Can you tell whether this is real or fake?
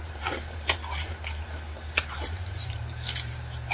fake